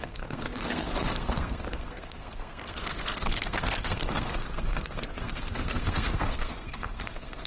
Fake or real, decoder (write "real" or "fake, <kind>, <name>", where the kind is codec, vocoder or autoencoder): fake, codec, SNAC